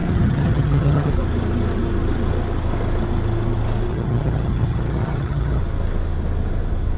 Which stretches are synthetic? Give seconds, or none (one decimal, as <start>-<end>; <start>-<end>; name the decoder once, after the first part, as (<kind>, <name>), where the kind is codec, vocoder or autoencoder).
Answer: 0.0-1.1 (vocoder, HiFi-GAN); 3.9-5.6